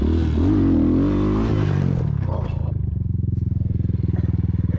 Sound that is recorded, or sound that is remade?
recorded